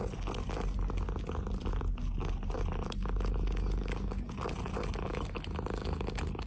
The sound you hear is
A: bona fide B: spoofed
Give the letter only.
A